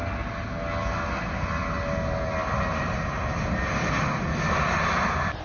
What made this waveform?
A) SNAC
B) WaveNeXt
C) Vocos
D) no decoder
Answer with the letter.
D